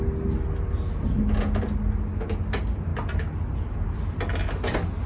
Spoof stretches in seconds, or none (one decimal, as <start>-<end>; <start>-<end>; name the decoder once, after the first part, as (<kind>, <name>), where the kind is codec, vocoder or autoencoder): none